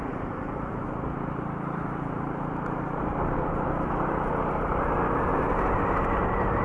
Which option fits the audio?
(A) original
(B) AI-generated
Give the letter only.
B